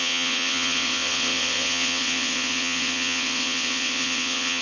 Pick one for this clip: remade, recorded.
remade